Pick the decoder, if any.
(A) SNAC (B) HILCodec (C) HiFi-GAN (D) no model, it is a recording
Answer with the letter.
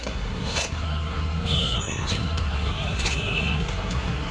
A